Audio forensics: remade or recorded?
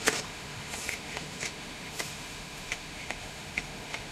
remade